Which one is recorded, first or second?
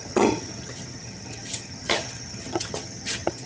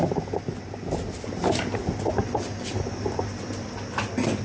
second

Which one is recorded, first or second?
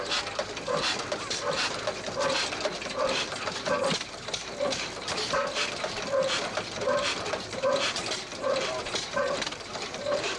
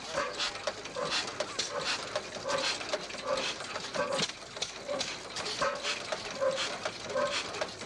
second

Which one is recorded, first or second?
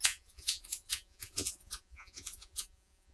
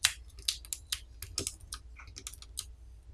second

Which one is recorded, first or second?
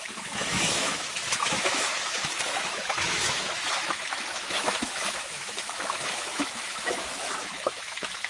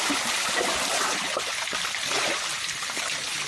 second